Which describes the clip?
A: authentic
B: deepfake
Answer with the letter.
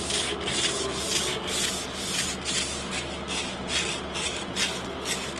A